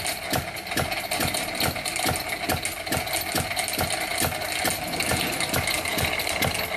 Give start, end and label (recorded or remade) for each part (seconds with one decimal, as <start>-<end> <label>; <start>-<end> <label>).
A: 0.0-6.8 recorded